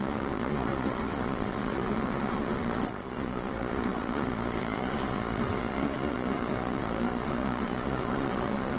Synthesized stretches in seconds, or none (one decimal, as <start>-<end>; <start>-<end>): 0.0-8.8